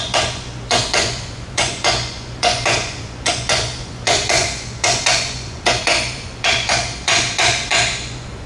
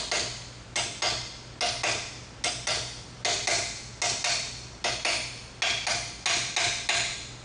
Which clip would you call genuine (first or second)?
second